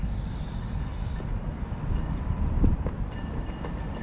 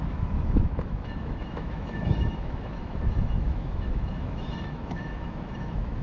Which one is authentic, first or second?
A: first